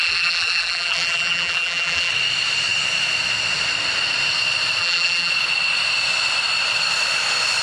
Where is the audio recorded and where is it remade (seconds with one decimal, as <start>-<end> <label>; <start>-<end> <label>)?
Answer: 0.0-2.1 remade; 2.1-4.8 recorded; 4.8-5.3 remade; 5.3-7.6 recorded